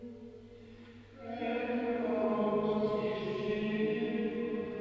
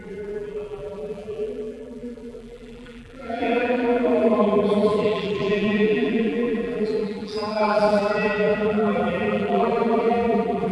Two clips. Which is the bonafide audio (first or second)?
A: first